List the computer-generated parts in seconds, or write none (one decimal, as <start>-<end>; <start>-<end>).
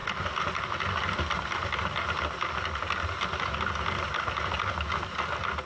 none